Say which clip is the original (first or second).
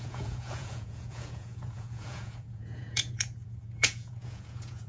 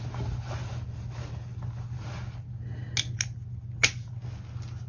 second